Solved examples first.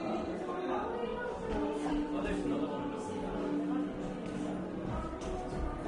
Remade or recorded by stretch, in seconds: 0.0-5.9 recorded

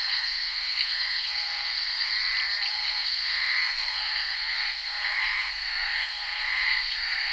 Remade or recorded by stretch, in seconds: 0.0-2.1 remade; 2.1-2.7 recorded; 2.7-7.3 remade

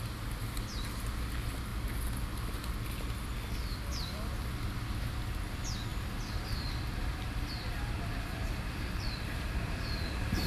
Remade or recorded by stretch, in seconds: 0.0-3.9 recorded; 3.9-5.1 remade; 5.1-5.9 recorded; 5.9-10.5 remade

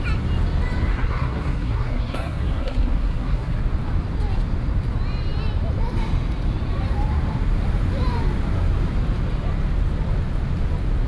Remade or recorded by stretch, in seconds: 0.0-0.9 recorded; 0.9-3.6 remade; 3.6-11.1 recorded

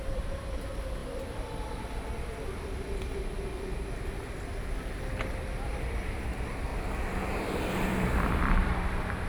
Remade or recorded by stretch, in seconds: 0.0-1.0 remade; 1.0-6.2 recorded; 6.2-6.7 remade; 6.7-7.5 recorded; 7.5-9.3 remade

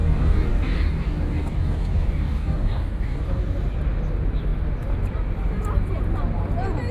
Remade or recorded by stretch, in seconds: 0.0-3.2 remade; 3.2-6.9 recorded

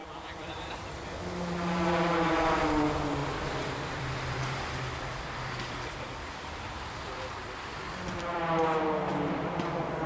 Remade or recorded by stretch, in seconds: 0.0-0.7 remade; 0.7-3.2 recorded; 3.2-8.4 remade; 8.4-9.1 recorded; 9.1-10.1 remade